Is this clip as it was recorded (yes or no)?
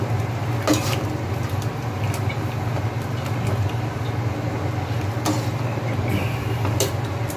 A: yes